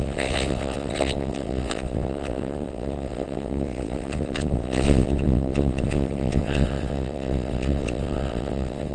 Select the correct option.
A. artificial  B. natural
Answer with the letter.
A